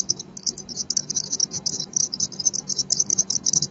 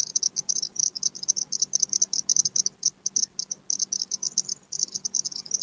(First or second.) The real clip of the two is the second